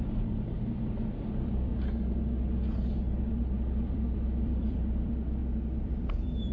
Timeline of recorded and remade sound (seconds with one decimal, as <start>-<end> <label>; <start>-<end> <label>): 0.0-1.7 remade; 1.7-3.3 recorded; 3.3-5.4 remade; 5.4-6.0 recorded; 6.0-6.5 remade